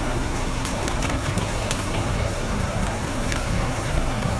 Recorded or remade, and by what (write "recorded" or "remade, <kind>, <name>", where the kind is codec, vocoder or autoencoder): remade, codec, SNAC